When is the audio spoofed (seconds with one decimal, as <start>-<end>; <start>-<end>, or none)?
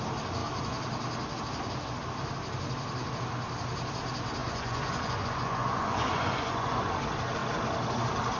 4.4-6.9